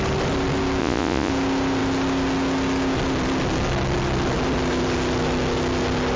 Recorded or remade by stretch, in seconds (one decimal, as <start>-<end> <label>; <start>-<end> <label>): 0.0-0.8 recorded; 0.8-1.3 remade; 1.3-6.2 recorded